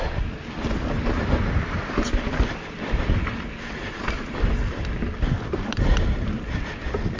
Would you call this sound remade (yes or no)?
no